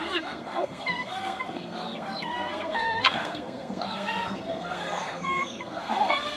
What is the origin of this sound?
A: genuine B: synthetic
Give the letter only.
B